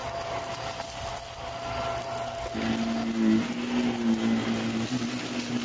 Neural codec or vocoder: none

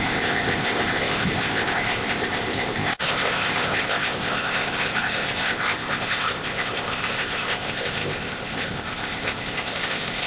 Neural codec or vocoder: codec, ZipCodec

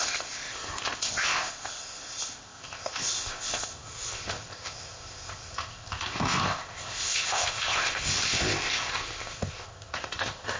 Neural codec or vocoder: codec, ZipCodec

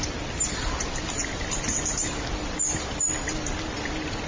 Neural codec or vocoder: none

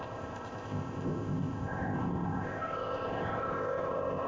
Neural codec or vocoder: codec, ZipCodec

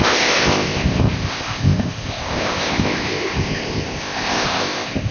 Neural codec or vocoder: codec, ZipCodec